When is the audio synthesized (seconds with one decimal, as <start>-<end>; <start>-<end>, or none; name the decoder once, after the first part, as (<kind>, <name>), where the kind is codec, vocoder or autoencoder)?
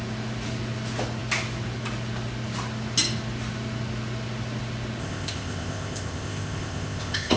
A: 5.0-7.4 (codec, ZipCodec)